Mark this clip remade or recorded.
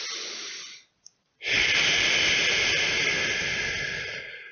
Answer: recorded